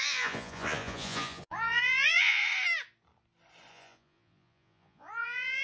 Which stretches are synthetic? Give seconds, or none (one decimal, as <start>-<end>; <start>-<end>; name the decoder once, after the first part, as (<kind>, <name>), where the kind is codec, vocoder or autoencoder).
0.0-2.4 (vocoder, Vocos); 3.7-5.6